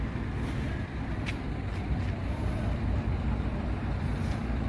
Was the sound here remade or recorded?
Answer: recorded